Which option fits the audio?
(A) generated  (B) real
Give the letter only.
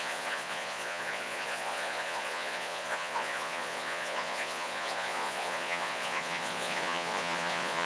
A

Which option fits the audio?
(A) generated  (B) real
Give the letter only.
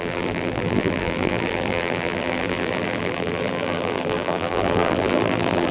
A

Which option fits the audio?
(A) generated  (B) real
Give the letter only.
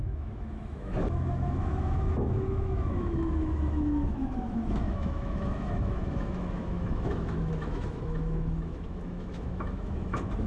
A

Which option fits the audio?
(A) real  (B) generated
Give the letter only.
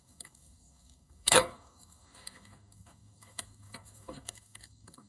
B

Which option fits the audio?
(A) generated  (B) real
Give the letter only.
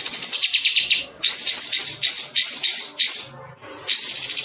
B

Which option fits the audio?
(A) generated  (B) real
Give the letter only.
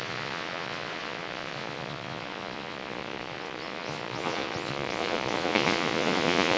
A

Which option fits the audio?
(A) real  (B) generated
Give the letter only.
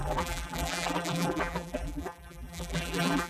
B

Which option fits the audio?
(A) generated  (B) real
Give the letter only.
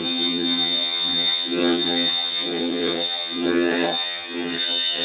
A